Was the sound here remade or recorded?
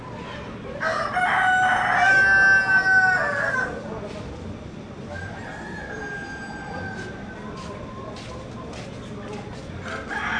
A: recorded